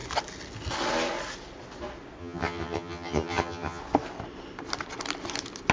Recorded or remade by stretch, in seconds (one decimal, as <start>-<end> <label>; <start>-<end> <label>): 0.0-2.2 recorded; 2.2-3.8 remade; 3.8-5.7 recorded

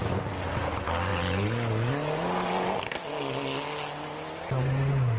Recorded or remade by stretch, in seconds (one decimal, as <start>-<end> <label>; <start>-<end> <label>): 0.0-5.2 recorded